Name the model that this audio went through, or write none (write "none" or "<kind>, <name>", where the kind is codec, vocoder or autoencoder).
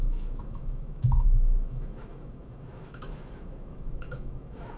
autoencoder, DAC-VAE